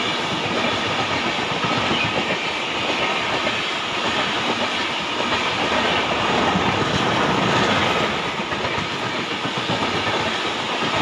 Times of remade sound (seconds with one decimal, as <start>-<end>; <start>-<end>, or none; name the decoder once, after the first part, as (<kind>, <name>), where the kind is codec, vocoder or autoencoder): none